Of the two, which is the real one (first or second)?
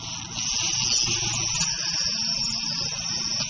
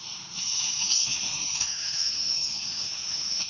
first